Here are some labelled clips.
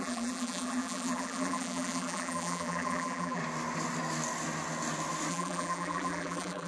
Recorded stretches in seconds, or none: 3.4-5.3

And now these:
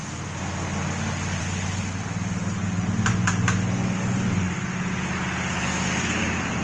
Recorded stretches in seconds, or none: 0.0-6.6

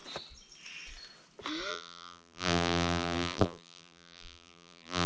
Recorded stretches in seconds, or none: 0.0-1.7

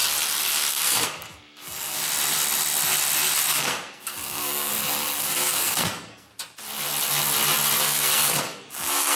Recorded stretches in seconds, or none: 0.0-0.7; 2.0-3.5; 4.7-5.2; 6.3-7.8

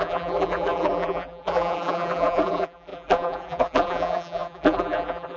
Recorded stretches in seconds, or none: none